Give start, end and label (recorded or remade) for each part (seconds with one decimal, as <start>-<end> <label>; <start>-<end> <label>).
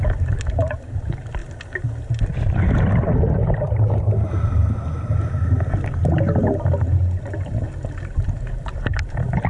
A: 0.0-9.5 recorded